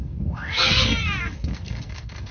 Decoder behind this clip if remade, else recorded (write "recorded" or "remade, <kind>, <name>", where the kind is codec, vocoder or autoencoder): remade, codec, SNAC